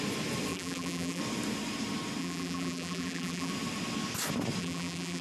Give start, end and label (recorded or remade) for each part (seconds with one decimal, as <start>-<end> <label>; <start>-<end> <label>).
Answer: 0.0-0.5 recorded; 0.5-1.2 remade; 1.2-2.2 recorded; 2.2-3.5 remade; 3.5-4.6 recorded; 4.6-5.2 remade

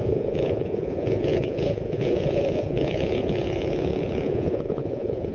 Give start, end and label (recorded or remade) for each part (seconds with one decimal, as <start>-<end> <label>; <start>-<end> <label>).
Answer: 0.0-5.3 remade

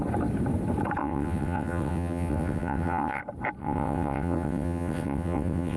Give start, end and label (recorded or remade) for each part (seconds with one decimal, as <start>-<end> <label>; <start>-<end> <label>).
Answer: 0.0-1.0 recorded; 1.0-3.2 remade; 3.2-3.6 recorded; 3.6-5.8 remade

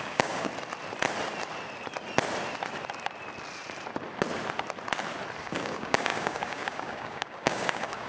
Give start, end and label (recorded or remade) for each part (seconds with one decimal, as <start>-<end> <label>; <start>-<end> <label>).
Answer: 0.0-0.5 remade; 0.5-5.4 recorded; 5.4-8.1 remade